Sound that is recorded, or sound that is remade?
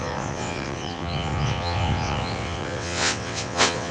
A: remade